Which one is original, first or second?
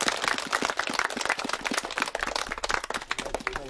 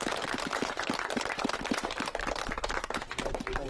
first